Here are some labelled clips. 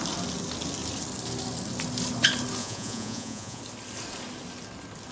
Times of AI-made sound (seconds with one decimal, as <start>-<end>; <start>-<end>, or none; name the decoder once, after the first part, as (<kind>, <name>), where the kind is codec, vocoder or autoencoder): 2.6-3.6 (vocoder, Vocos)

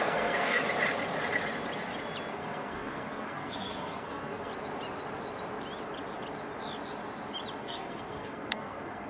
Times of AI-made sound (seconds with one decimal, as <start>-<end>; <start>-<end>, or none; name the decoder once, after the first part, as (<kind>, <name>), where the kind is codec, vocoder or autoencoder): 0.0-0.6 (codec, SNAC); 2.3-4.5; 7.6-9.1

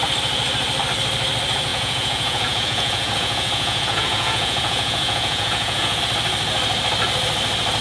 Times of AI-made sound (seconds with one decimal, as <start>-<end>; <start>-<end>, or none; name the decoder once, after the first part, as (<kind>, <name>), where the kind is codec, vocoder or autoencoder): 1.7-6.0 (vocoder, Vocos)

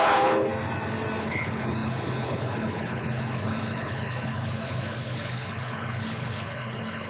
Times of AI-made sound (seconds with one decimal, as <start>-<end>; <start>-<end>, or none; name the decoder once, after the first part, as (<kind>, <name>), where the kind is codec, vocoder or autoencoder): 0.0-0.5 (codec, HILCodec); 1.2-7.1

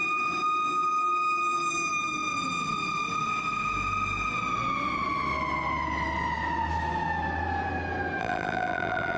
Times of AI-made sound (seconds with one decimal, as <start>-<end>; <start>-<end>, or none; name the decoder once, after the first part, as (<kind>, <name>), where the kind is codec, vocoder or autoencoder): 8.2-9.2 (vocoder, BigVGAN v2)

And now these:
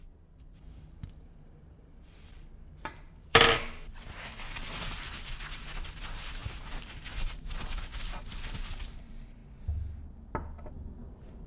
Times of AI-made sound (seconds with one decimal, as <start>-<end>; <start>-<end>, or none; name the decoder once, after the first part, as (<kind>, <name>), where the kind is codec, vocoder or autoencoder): 0.0-9.4 (vocoder, BigVGAN v2); 10.7-11.5

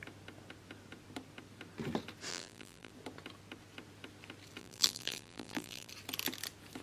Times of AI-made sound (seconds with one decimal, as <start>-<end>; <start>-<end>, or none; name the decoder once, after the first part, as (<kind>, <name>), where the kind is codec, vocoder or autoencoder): 2.3-2.9 (vocoder, BigVGAN v2); 4.6-5.9